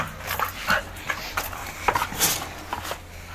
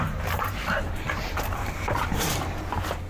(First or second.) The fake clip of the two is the second